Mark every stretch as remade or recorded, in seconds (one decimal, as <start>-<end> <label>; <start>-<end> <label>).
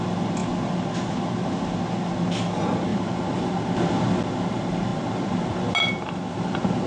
0.0-6.9 recorded